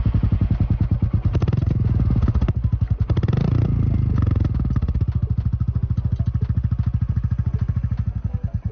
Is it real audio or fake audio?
real